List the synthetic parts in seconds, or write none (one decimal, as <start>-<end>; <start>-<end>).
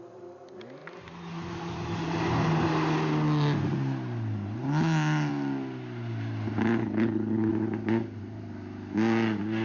6.8-7.5